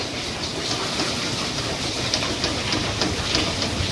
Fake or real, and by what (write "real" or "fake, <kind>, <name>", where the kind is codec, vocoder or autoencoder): real